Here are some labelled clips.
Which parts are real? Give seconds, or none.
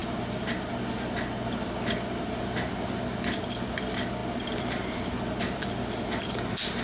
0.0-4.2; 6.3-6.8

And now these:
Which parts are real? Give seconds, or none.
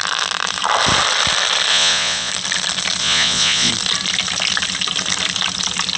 0.0-1.7; 2.3-3.0; 3.7-6.0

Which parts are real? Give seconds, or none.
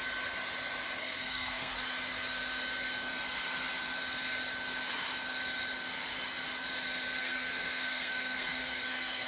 0.0-1.0; 1.7-7.2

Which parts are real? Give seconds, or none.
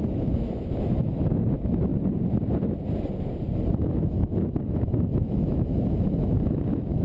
1.9-3.8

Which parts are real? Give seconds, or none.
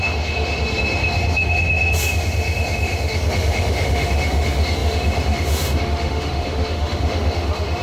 none